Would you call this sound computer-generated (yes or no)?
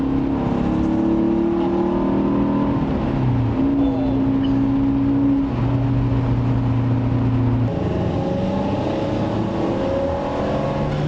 no